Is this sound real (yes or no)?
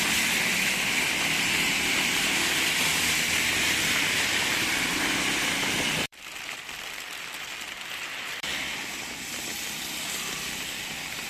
no